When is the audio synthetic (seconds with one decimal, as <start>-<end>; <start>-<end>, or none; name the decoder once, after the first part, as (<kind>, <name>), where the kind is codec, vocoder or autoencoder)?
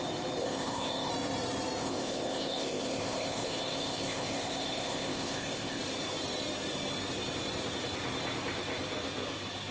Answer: 0.4-1.1 (codec, ZipCodec); 1.8-5.8